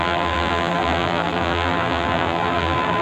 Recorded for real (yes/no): no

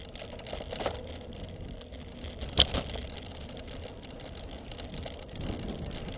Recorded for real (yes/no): yes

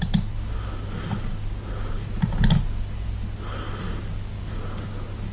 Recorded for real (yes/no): yes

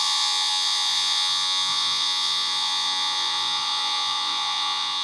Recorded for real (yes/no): no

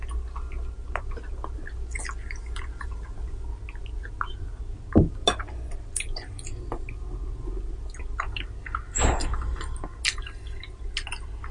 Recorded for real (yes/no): yes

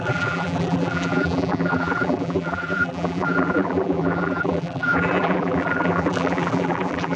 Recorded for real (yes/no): no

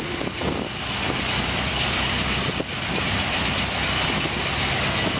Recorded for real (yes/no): yes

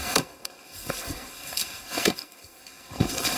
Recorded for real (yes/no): no